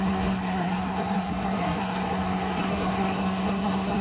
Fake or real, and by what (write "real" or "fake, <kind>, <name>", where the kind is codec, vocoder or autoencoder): fake, codec, SNAC